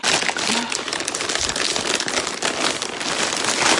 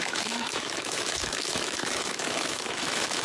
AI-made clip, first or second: second